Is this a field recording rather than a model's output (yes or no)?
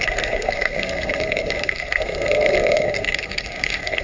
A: no